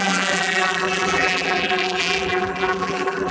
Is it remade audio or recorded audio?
remade